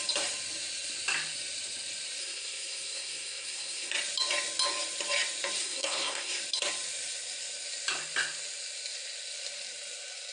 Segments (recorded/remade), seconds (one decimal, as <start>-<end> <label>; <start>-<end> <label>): 0.0-2.2 recorded; 2.2-3.9 remade; 3.9-5.6 recorded; 5.6-6.4 remade; 6.4-10.3 recorded